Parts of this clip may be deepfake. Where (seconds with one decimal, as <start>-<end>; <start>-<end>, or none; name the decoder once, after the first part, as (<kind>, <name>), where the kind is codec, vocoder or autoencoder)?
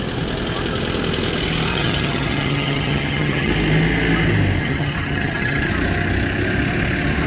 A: 1.7-3.5 (vocoder, HiFi-GAN); 4.6-5.7